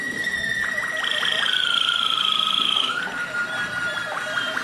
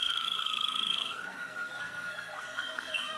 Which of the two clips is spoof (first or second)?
second